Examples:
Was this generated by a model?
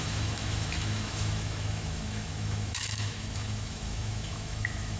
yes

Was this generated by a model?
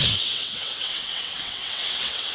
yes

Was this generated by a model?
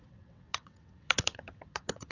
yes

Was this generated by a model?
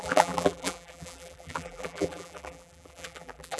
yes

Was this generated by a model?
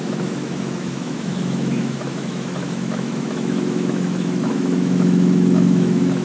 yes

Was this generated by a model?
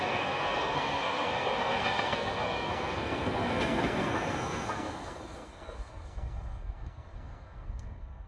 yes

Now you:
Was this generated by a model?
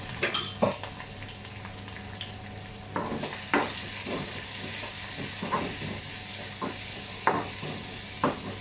no